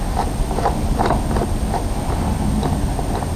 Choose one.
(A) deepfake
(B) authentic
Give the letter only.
B